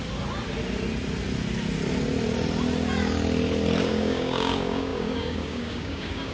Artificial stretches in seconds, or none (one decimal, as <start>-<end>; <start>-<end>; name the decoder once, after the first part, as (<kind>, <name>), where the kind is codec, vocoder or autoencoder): 3.8-6.3 (codec, DAC)